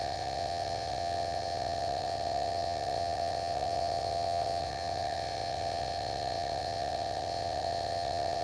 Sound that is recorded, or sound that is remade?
remade